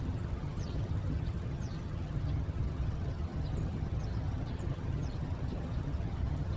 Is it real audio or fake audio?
fake